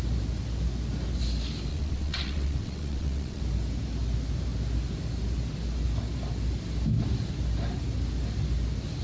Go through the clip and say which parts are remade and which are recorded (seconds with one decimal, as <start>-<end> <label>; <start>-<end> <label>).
0.0-1.7 recorded; 1.7-3.4 remade; 3.4-9.0 recorded